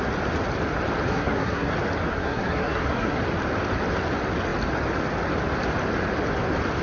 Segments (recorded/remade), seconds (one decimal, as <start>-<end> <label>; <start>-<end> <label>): 0.0-1.1 recorded; 1.1-1.7 remade; 1.7-2.1 recorded; 2.1-3.2 remade; 3.2-6.8 recorded